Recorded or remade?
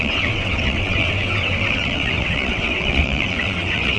remade